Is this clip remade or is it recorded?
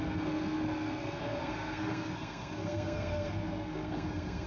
remade